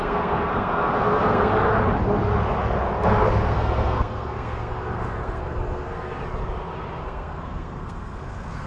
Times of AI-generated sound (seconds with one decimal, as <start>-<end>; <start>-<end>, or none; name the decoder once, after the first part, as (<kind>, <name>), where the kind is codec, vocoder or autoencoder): 0.0-1.5 (codec, SNAC); 3.4-6.2; 7.0-8.7